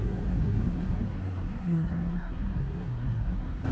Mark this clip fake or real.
fake